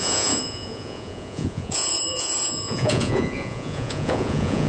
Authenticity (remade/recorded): remade